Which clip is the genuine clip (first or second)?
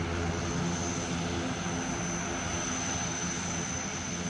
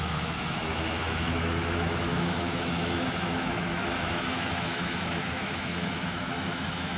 first